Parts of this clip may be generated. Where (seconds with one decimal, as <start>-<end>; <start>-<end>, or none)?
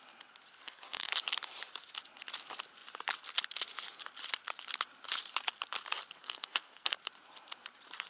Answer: 0.6-1.1; 6.2-6.9